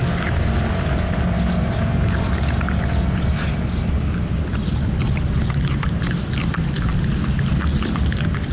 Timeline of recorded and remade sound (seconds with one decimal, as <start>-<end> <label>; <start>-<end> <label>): 0.0-8.5 recorded